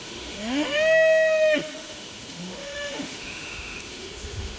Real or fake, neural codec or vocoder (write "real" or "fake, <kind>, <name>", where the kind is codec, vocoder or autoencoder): fake, autoencoder, DAC-VAE